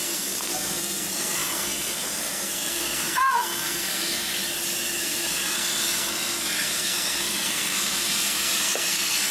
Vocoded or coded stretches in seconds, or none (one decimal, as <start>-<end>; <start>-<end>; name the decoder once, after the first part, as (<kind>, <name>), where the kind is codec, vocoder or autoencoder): 0.0-4.3 (codec, SNAC); 5.0-9.3